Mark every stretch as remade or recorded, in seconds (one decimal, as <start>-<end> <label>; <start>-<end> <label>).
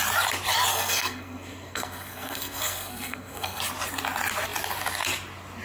0.0-0.7 recorded; 0.7-3.6 remade; 3.6-5.6 recorded